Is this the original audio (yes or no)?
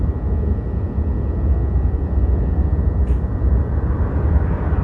yes